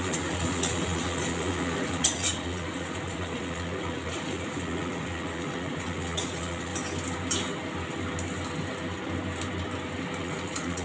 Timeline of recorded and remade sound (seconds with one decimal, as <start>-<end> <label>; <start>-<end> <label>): 0.0-6.7 remade; 6.7-10.2 recorded; 10.2-10.8 remade